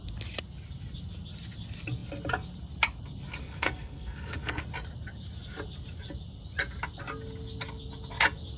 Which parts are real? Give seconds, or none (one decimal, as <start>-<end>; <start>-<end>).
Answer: 0.0-3.4; 4.6-8.6